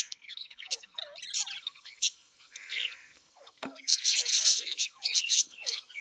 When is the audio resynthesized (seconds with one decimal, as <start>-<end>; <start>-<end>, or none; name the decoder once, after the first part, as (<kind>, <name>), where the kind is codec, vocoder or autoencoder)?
0.0-1.0 (codec, SNAC); 1.6-6.0

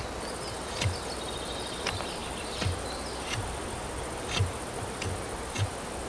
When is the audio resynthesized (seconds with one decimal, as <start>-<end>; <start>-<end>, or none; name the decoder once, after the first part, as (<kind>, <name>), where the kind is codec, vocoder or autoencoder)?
none

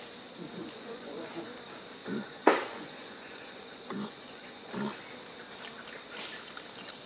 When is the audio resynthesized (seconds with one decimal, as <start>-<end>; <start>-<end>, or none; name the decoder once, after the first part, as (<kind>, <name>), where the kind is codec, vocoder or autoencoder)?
0.6-1.3 (vocoder, Vocos); 2.0-4.7

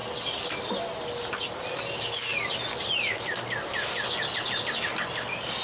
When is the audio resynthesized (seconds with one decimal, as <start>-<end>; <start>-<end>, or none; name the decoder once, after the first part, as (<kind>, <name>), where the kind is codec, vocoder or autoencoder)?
none